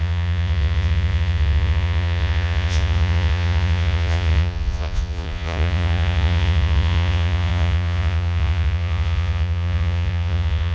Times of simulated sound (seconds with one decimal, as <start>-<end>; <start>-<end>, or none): 0.0-10.7

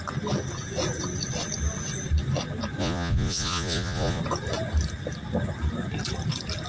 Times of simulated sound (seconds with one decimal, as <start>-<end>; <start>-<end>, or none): 2.8-4.2

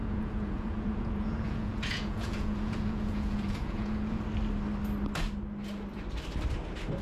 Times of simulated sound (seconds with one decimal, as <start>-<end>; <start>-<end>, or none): 0.0-4.2

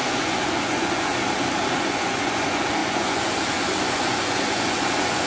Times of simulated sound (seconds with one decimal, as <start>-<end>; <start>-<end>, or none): 0.0-1.1; 1.7-5.3

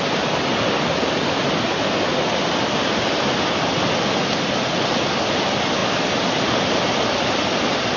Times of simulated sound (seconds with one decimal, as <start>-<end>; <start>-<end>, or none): none

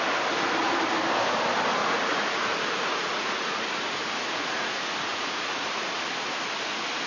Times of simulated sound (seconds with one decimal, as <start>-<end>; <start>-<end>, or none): 1.8-6.1

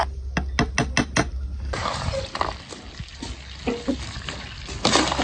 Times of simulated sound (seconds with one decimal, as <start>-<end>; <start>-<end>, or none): none

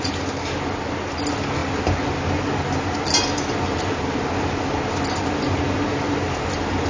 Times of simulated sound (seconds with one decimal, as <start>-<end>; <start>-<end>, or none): none